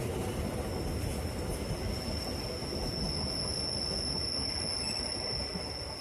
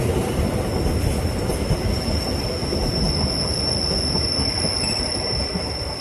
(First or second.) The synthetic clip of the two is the second